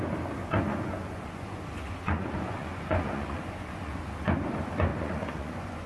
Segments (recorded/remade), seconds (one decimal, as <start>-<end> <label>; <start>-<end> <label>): 0.0-0.4 recorded; 0.4-3.9 remade; 3.9-4.9 recorded; 4.9-5.9 remade